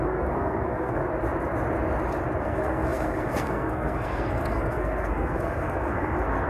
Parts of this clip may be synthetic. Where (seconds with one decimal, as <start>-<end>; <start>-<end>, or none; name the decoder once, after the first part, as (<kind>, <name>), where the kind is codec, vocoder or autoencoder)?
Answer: 0.0-1.0 (codec, SNAC); 2.4-6.5